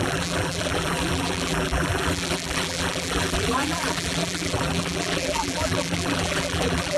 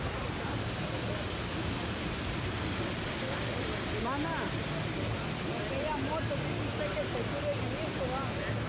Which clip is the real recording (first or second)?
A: second